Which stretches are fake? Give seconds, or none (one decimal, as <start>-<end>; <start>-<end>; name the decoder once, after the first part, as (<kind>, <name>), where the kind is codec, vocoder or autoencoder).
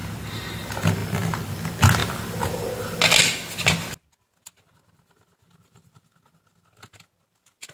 none